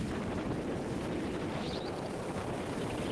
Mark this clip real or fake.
fake